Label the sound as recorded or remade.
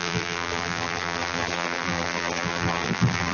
remade